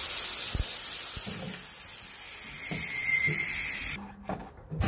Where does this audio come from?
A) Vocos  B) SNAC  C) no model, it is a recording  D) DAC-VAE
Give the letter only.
C